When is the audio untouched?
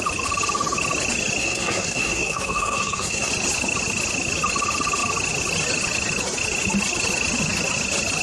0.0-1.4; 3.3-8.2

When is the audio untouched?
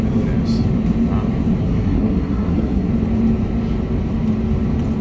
0.0-1.6; 2.9-5.0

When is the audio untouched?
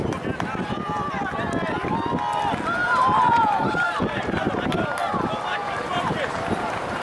0.0-2.8; 4.7-5.6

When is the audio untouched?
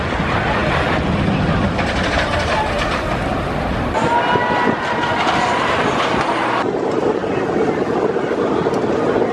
0.0-9.3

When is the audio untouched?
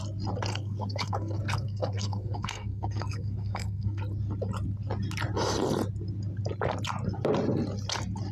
0.0-0.5; 4.0-8.3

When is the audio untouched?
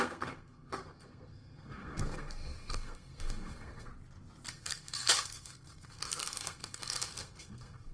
3.9-4.5